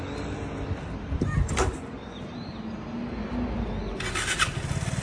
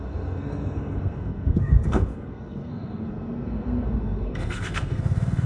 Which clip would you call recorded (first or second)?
first